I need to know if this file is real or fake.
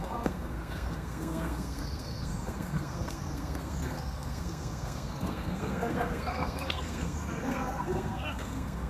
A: fake